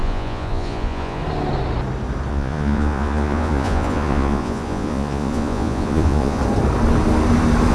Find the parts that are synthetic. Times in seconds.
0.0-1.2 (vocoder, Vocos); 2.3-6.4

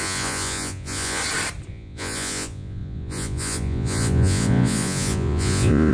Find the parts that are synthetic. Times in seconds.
0.0-1.2 (vocoder, Vocos); 1.7-5.9

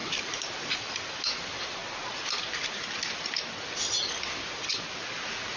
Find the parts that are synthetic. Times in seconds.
none

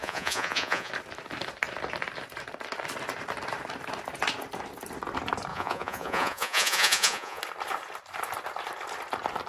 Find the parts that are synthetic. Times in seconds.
0.0-0.9 (vocoder, Vocos); 5.5-7.4